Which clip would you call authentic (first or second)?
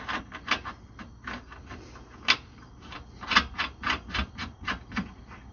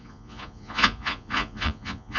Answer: first